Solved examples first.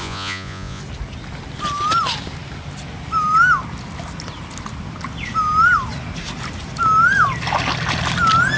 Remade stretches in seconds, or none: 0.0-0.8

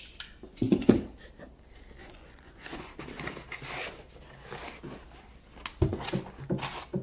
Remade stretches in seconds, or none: 0.5-1.0; 2.0-2.9

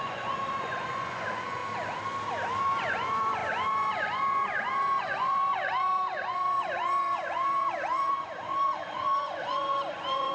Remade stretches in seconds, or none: 0.0-1.6; 2.6-10.3

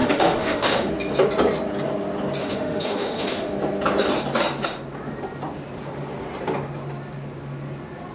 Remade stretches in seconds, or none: 0.0-0.9; 2.4-3.5

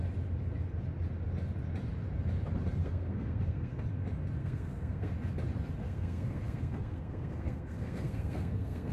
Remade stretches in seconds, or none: 2.8-3.8; 4.4-5.1; 5.8-8.9

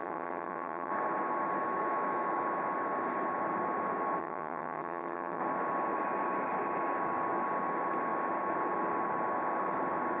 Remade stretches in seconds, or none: 0.0-0.9; 4.2-5.4

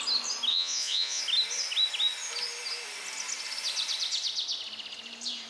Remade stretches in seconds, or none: 0.5-1.2